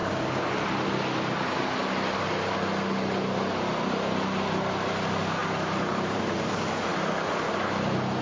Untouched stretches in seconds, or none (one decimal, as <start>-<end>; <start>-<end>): 0.0-5.4; 6.5-8.2